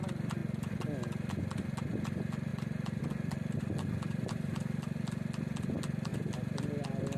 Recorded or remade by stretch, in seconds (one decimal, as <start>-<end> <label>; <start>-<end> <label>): 0.0-7.2 recorded